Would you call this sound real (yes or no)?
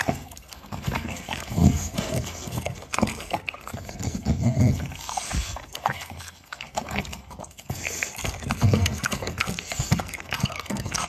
no